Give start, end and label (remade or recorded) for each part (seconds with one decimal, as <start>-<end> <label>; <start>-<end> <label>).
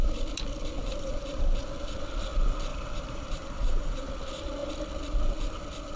0.0-0.9 recorded; 0.9-1.6 remade; 1.6-2.7 recorded; 2.7-4.0 remade; 4.0-6.0 recorded